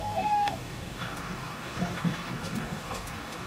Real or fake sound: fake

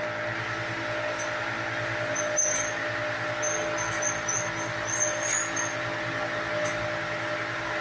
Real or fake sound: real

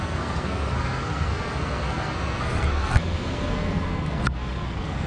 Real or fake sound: fake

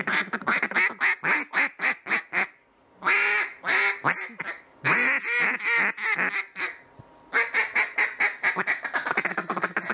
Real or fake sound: real